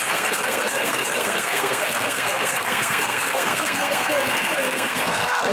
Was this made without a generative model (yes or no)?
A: no